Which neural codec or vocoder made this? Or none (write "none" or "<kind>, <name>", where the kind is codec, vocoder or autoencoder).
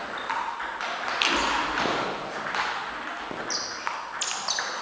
none